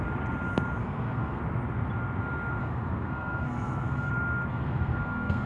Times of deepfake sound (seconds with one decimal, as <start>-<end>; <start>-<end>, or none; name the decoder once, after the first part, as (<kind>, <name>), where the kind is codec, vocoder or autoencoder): 0.8-1.4 (codec, SNAC); 2.6-4.1; 4.5-5.5